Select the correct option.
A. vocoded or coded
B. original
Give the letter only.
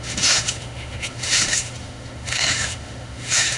A